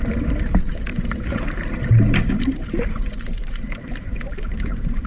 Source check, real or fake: fake